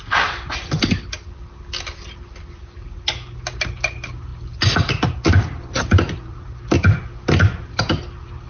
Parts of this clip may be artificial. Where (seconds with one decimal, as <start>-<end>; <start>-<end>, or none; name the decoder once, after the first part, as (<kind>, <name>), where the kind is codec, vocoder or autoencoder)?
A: none